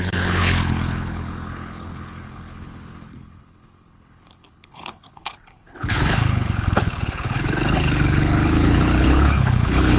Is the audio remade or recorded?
remade